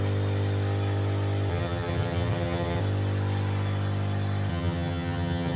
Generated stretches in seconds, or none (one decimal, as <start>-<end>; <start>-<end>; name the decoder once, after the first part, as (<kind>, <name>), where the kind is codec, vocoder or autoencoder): 1.5-2.8 (vocoder, HiFi-GAN); 4.5-5.6